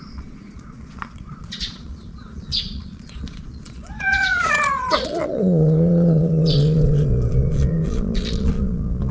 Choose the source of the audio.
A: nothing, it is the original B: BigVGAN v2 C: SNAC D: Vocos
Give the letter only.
D